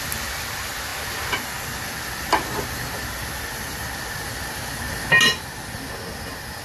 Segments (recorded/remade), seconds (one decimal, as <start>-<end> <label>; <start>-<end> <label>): 0.0-6.6 recorded